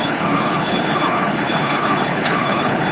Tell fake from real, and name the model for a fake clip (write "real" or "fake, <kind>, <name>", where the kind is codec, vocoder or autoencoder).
fake, codec, HILCodec